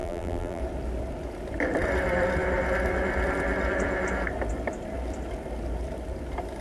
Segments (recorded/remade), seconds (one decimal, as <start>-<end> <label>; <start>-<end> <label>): 0.0-0.6 remade; 0.6-6.6 recorded